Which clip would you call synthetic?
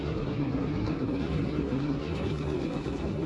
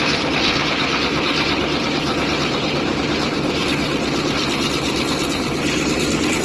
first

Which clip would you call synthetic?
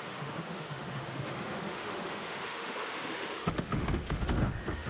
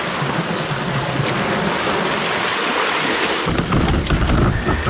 first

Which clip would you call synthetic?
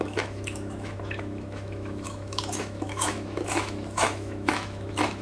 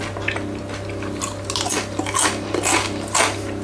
first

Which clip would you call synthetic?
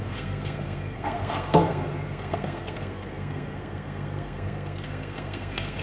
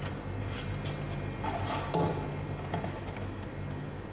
first